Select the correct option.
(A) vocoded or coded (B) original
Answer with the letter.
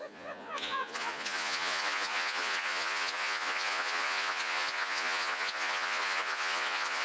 A